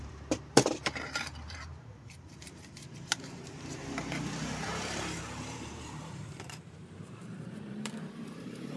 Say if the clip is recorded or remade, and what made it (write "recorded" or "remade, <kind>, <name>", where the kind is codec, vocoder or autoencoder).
remade, vocoder, BigVGAN v2